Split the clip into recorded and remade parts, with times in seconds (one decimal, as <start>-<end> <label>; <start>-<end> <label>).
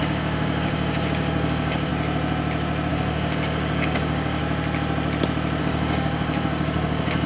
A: 0.0-1.9 remade; 1.9-2.9 recorded; 2.9-4.4 remade; 4.4-5.6 recorded; 5.6-7.3 remade